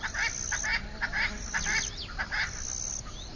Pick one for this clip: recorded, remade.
recorded